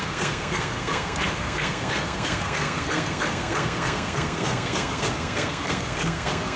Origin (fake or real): fake